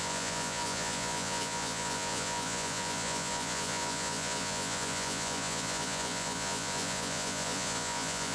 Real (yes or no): no